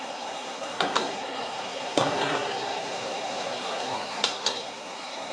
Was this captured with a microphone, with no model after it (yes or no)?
no